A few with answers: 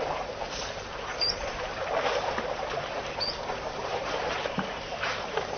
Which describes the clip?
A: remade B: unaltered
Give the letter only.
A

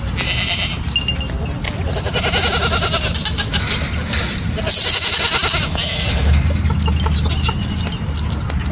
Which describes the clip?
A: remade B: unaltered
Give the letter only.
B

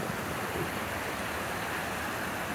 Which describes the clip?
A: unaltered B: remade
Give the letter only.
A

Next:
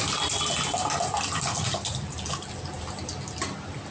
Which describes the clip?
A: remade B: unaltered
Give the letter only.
B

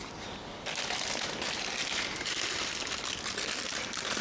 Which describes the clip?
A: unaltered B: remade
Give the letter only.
A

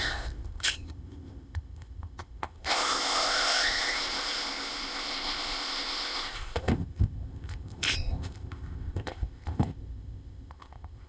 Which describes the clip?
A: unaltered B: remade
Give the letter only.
B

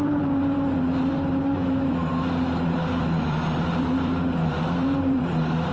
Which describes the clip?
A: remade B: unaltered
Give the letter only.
A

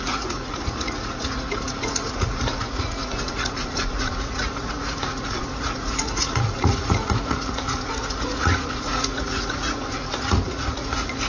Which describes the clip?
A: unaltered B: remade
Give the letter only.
B